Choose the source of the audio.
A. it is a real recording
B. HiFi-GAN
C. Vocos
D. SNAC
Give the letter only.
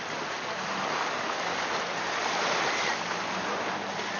A